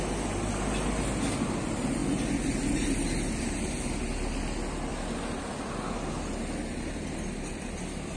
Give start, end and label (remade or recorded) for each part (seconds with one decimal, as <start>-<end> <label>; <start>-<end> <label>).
0.0-8.2 recorded